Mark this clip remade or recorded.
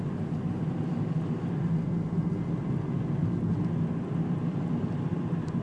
recorded